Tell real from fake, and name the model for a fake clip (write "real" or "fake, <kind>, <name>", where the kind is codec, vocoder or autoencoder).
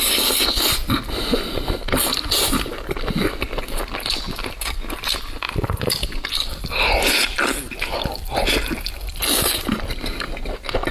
real